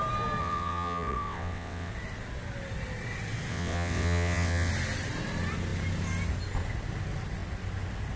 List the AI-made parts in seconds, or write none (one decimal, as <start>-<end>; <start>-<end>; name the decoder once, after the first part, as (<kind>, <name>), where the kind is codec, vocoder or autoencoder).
0.4-1.9 (vocoder, WaveNeXt); 3.5-4.7